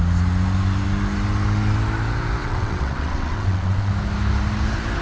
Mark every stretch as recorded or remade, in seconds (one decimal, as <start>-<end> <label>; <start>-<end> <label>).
0.0-2.4 recorded; 2.4-3.9 remade; 3.9-5.0 recorded